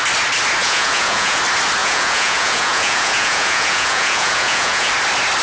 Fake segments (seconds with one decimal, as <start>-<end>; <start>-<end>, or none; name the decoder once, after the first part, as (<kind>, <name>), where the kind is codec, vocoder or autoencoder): 0.6-1.4 (vocoder, Vocos); 1.8-4.9